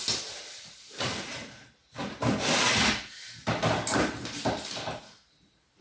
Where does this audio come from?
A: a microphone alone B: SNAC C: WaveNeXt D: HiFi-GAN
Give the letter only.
A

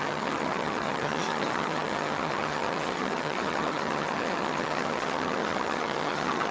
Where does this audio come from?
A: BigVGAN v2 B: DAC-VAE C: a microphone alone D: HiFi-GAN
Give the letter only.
D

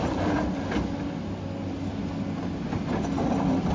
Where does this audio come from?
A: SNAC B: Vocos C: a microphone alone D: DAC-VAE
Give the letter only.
C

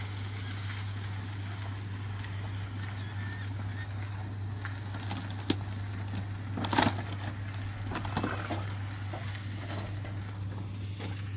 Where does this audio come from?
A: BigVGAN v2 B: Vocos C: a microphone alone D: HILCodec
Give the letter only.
C